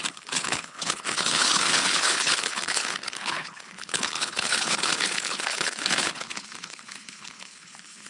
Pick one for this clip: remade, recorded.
remade